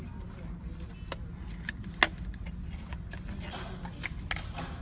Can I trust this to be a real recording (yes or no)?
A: yes